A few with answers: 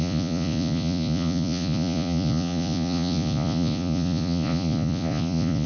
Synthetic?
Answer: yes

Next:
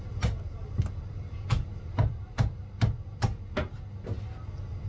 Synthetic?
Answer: no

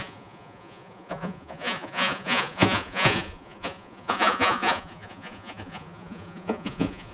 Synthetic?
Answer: yes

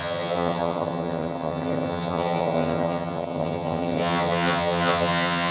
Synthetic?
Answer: yes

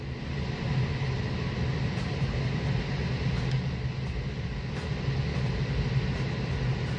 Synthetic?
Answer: no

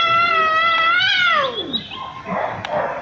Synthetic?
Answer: no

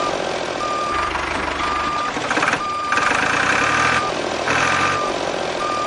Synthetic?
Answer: yes